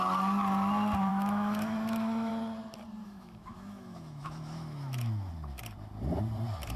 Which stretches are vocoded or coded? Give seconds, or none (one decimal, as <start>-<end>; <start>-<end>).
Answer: 1.1-2.3; 3.0-5.3